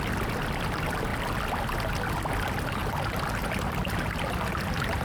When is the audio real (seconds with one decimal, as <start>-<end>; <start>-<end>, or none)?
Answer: 0.0-5.0